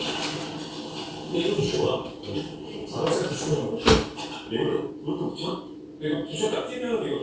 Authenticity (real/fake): real